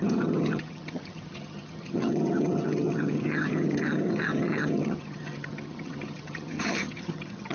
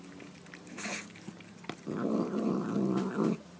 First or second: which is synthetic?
first